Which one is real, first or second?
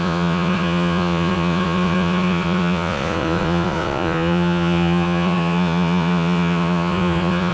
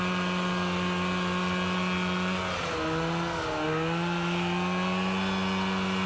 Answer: second